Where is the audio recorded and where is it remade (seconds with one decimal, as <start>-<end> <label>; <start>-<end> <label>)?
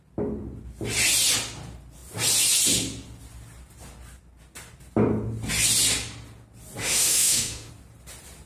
0.0-6.8 recorded; 6.8-7.7 remade; 7.7-8.5 recorded